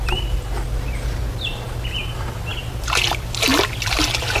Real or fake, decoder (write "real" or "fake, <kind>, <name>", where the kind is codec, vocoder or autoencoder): real